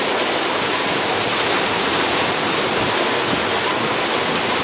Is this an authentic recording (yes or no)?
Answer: yes